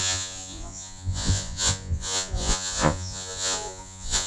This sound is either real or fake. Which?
fake